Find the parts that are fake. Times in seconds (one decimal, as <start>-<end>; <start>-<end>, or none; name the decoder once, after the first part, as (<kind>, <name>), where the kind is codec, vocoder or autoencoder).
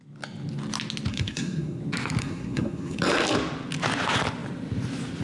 1.1-1.8 (codec, SNAC); 2.2-3.0